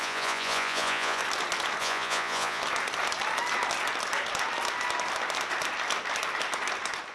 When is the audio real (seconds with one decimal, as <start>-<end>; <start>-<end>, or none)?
1.2-1.8; 2.6-7.1